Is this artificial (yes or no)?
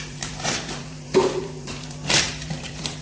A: yes